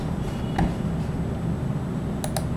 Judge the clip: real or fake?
real